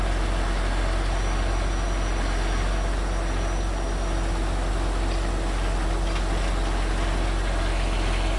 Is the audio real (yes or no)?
yes